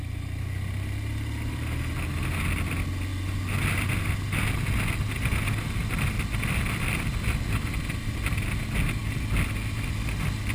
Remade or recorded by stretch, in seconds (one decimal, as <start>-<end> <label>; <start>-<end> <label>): 0.0-10.5 recorded